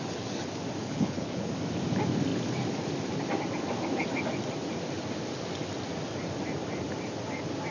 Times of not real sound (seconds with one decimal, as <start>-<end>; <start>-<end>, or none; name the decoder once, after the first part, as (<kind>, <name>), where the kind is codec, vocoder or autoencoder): 0.8-1.5 (codec, HILCodec)

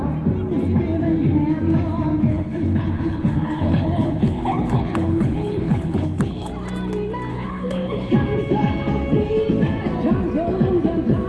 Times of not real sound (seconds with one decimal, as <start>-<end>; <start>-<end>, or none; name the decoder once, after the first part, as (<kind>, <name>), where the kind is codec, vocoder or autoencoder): 2.3-6.5 (codec, HILCodec); 7.3-8.1

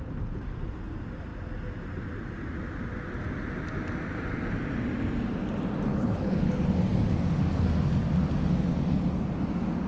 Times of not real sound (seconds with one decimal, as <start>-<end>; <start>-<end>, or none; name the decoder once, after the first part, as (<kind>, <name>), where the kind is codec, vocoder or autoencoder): 5.9-6.5 (codec, HILCodec)

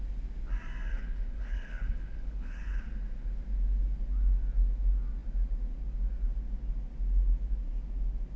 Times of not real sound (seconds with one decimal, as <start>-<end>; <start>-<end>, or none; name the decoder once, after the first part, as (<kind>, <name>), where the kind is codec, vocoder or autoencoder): 0.9-2.8 (codec, HILCodec)

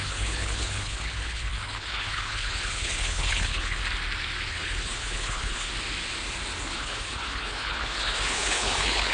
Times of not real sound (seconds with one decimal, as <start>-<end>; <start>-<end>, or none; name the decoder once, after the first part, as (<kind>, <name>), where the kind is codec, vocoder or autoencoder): 0.0-3.8 (codec, HILCodec); 4.5-5.7; 6.7-9.1

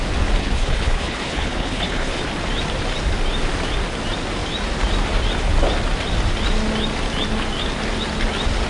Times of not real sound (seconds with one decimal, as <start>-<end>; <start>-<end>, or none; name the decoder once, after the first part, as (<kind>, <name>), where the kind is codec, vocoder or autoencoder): 0.4-2.2 (codec, HILCodec)